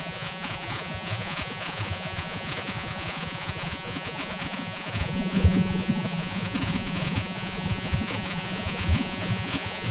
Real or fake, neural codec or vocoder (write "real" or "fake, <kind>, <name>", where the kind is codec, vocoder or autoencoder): fake, vocoder, Vocos